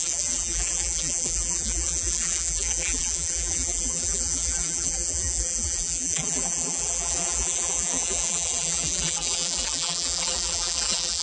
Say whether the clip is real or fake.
fake